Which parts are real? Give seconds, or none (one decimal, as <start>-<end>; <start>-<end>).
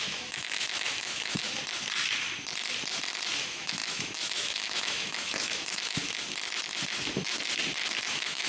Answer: 1.4-3.4; 6.0-8.1